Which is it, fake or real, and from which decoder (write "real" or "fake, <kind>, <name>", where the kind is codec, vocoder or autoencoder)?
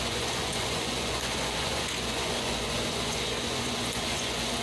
fake, vocoder, Vocos